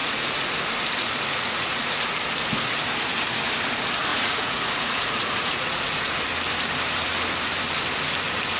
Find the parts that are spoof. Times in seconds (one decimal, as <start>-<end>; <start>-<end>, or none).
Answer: 0.0-0.6; 1.0-1.8; 4.1-6.2